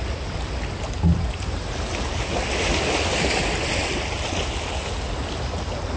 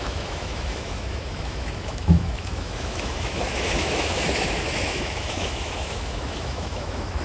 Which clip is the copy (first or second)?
second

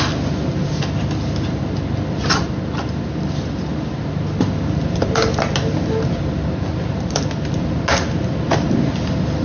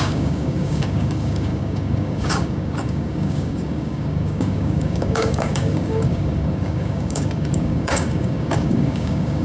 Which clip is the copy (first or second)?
second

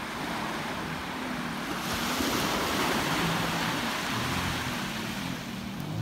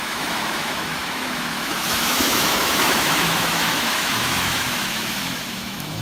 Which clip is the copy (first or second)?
second